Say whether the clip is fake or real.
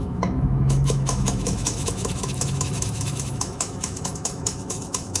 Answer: fake